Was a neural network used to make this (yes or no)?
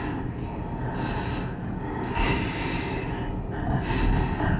no